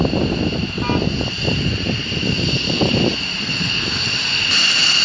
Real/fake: real